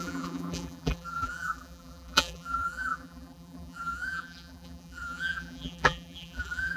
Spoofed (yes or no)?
yes